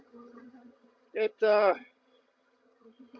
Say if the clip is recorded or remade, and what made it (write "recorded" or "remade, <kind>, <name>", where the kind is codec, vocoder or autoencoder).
remade, vocoder, HiFi-GAN